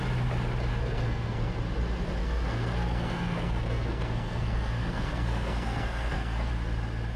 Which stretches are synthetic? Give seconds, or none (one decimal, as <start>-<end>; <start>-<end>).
0.7-1.5; 2.2-6.5